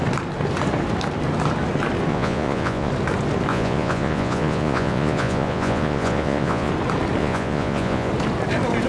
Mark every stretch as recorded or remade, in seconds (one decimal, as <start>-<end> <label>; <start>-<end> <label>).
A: 0.0-2.1 recorded; 2.1-2.9 remade; 2.9-3.5 recorded; 3.5-6.7 remade; 6.7-7.2 recorded; 7.2-8.1 remade; 8.1-8.9 recorded